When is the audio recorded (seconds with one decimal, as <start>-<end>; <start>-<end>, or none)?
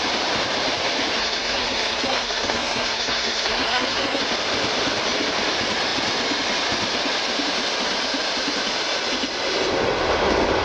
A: 0.0-1.2; 4.2-10.6